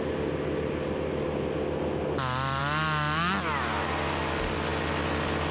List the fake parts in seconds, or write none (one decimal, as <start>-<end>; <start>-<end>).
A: none